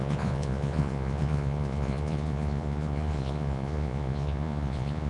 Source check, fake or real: fake